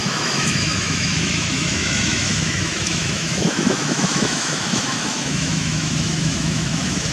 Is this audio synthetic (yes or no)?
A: yes